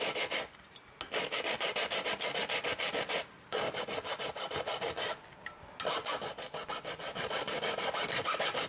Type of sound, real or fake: real